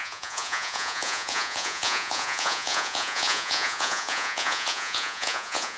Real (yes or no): no